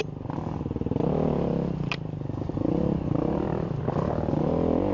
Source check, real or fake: real